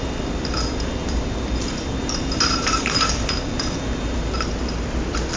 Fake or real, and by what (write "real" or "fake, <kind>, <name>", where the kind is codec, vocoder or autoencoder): real